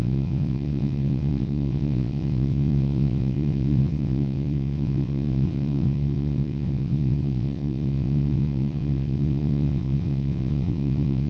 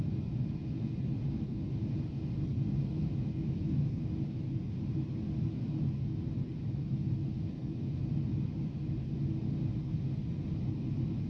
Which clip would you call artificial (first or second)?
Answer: first